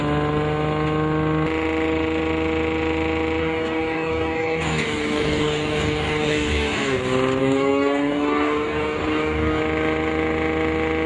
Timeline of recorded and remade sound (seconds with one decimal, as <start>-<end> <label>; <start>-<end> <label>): 0.0-3.4 recorded; 3.4-7.0 remade; 7.0-7.4 recorded; 7.4-9.6 remade; 9.6-11.1 recorded